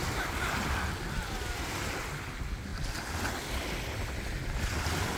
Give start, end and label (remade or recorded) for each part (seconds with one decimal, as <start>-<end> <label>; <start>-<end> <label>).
0.0-5.2 recorded